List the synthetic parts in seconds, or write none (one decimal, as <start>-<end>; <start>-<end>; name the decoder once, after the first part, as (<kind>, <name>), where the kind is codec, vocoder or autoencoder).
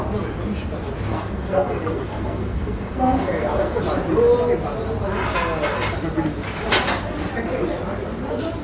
1.1-3.8 (codec, SNAC)